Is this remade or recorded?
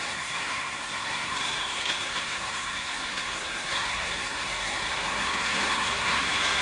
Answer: remade